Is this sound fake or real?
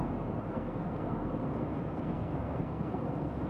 fake